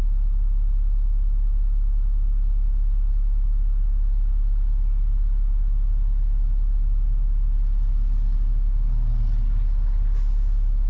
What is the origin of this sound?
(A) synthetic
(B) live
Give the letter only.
B